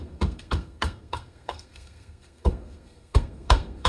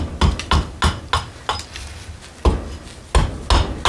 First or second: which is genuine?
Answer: second